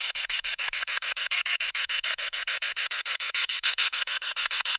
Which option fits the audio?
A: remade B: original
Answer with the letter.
A